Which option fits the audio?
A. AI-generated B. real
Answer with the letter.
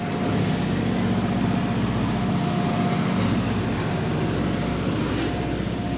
B